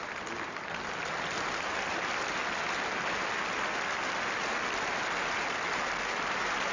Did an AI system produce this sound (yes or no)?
no